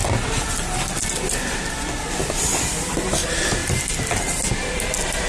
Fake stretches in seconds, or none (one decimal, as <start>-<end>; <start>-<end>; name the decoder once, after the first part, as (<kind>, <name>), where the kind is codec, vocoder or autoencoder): 2.2-3.6 (vocoder, BigVGAN v2); 4.7-5.3